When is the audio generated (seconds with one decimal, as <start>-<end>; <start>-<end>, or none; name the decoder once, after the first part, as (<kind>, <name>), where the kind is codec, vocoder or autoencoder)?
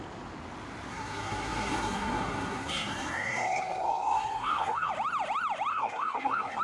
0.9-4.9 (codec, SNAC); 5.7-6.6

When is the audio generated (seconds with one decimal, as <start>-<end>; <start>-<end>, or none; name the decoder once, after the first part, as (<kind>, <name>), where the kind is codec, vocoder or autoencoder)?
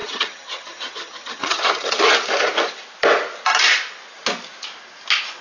0.0-2.0 (vocoder, HiFi-GAN)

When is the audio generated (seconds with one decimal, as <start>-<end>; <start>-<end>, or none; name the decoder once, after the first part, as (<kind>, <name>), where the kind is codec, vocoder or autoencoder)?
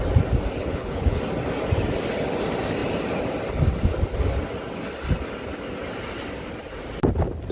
0.6-1.2 (codec, HILCodec)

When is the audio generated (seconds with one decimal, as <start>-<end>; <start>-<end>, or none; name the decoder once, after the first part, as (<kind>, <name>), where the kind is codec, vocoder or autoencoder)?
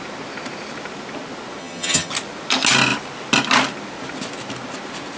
1.6-2.1 (vocoder, HiFi-GAN)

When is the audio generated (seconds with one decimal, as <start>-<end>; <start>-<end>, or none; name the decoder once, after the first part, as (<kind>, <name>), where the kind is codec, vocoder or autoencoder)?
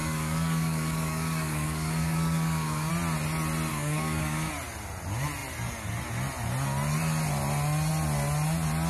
0.0-2.9 (codec, DAC); 3.7-4.5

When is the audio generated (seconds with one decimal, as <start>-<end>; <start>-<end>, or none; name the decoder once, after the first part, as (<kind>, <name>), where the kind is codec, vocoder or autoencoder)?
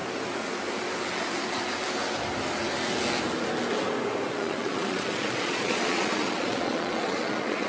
4.3-7.7 (vocoder, Vocos)